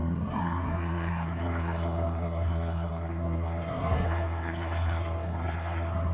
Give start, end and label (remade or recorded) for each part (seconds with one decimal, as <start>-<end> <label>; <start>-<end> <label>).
0.0-6.1 remade